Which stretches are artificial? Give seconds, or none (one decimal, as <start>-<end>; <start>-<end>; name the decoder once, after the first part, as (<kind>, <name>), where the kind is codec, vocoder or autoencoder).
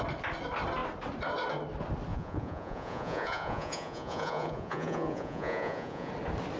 2.1-6.1 (vocoder, Vocos)